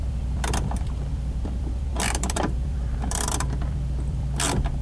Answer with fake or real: fake